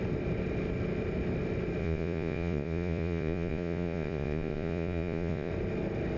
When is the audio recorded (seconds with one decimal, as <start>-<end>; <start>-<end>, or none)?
0.0-1.8; 5.5-6.2